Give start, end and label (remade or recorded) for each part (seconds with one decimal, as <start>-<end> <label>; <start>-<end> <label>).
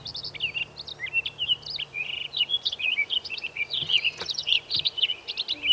0.0-1.9 recorded; 1.9-5.3 remade; 5.3-5.7 recorded